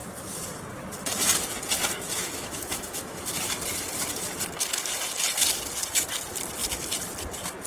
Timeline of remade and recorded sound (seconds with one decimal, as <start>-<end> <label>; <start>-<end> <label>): 0.0-2.2 recorded; 2.2-3.2 remade; 3.2-7.7 recorded